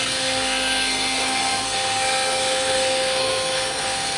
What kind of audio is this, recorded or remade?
remade